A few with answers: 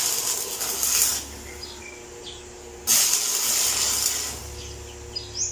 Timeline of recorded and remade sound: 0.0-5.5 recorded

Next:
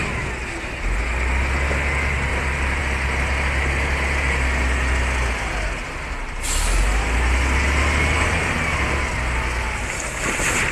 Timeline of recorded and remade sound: 0.0-2.3 recorded; 2.3-2.8 remade; 2.8-10.7 recorded

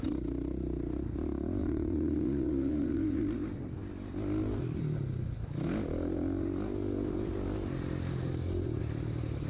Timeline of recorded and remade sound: 0.0-1.6 recorded; 1.6-3.2 remade; 3.2-9.5 recorded

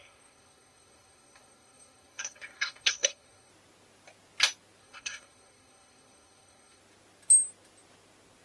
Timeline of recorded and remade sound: 0.0-3.5 remade; 3.5-4.8 recorded; 4.8-6.8 remade; 6.8-8.4 recorded